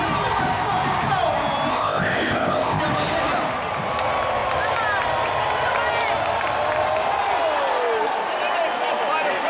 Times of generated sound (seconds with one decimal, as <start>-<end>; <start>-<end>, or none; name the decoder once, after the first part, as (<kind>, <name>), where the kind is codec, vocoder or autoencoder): 1.7-2.8 (codec, ZipCodec)